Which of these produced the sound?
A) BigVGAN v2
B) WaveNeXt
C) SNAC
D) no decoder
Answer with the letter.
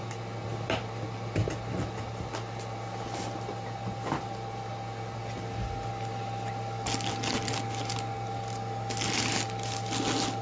D